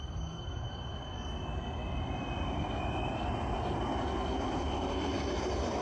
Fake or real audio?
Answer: real